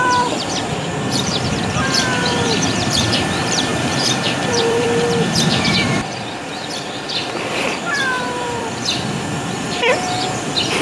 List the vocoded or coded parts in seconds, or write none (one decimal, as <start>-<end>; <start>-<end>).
0.0-10.8